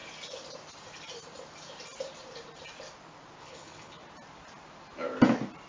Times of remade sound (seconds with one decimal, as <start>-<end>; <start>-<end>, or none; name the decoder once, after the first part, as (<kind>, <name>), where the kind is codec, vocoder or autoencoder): 3.4-4.0 (codec, HILCodec)